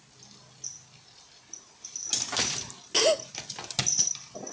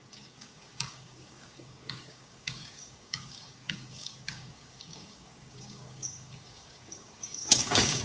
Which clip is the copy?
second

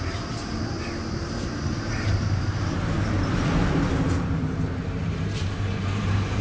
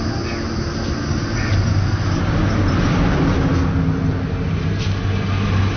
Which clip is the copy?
first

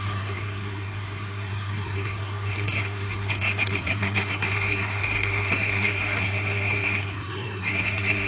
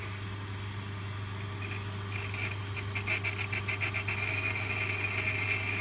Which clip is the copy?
first